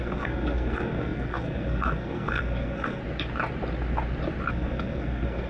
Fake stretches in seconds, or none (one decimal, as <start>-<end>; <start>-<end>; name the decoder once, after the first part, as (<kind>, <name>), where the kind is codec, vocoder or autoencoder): 0.0-3.0 (codec, SNAC); 4.5-5.5